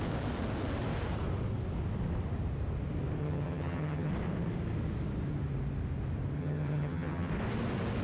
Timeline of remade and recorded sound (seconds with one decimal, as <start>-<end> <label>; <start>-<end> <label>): 0.0-3.2 recorded; 3.2-4.1 remade; 4.1-6.4 recorded; 6.4-7.3 remade; 7.3-8.0 recorded